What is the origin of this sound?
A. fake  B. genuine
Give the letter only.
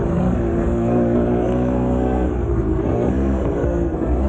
A